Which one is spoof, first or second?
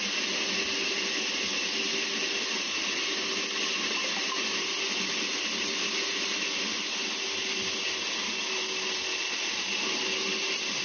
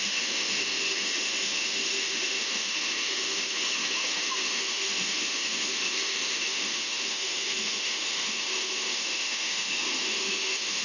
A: second